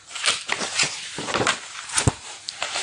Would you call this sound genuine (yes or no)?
yes